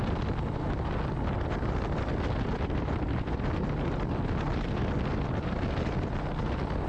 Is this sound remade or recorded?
recorded